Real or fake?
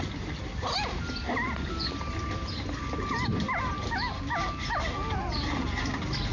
real